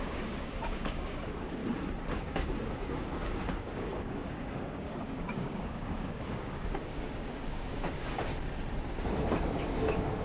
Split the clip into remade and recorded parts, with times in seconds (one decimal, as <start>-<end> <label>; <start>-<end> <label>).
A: 0.0-1.6 remade; 1.6-2.2 recorded; 2.2-8.3 remade; 8.3-9.5 recorded; 9.5-10.2 remade